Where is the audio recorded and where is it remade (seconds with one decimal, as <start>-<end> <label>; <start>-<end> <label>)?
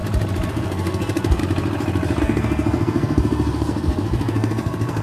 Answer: 0.0-0.5 recorded; 0.5-1.4 remade; 1.4-2.2 recorded; 2.2-5.0 remade